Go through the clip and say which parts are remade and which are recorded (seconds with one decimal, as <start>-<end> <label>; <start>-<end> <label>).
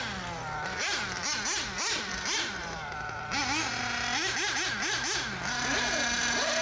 0.0-6.6 recorded